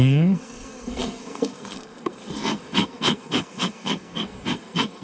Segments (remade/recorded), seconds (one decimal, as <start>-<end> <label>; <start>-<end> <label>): 0.0-5.0 remade